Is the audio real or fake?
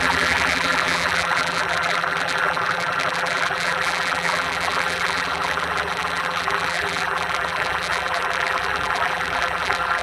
fake